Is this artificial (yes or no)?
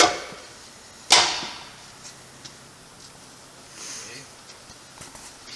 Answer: no